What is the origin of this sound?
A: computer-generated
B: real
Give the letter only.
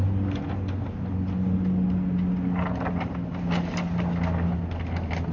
B